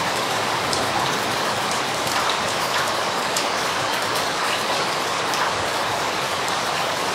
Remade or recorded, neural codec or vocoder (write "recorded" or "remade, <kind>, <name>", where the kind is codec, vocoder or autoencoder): remade, codec, DAC